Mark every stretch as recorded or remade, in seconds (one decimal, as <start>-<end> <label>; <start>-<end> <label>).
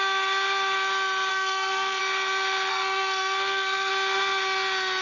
0.0-1.3 recorded; 1.3-2.0 remade; 2.0-2.7 recorded; 2.7-3.9 remade; 3.9-5.0 recorded